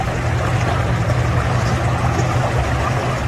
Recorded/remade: recorded